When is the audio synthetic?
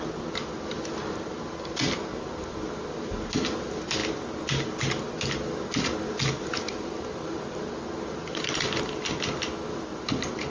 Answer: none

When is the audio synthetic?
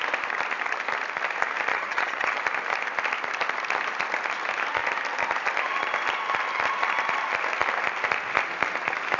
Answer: 1.7-2.4 (vocoder, HiFi-GAN)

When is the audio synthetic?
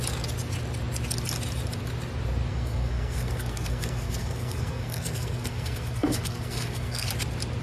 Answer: 2.5-7.1 (codec, SNAC)